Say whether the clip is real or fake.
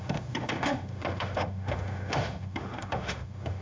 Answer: fake